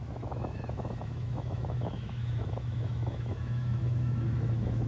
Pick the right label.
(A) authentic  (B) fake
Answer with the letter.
B